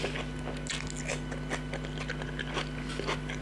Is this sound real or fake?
real